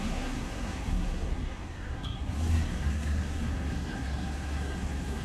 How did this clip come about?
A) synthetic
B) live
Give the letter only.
A